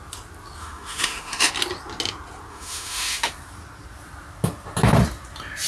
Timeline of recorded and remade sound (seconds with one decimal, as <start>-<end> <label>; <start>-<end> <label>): 0.0-0.6 recorded; 0.6-1.5 remade; 1.5-2.5 recorded; 2.5-3.3 remade; 3.3-5.7 recorded

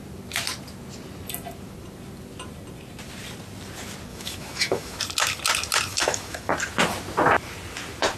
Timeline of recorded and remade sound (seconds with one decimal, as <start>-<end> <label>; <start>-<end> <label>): 0.0-4.1 recorded; 4.1-5.0 remade; 5.0-5.9 recorded; 5.9-6.5 remade; 6.5-8.2 recorded

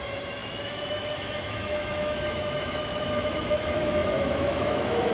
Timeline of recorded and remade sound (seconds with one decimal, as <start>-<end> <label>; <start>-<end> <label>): 0.0-5.1 remade

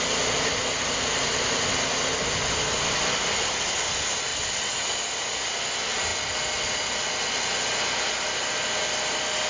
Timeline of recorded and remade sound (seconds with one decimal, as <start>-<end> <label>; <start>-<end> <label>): 0.0-9.5 recorded

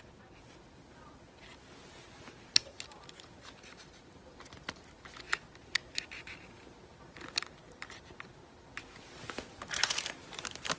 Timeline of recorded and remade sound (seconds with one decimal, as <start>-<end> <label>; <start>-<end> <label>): 0.0-10.8 recorded

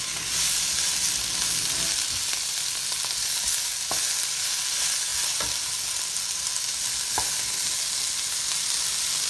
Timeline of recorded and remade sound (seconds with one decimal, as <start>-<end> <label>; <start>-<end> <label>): 0.0-9.3 recorded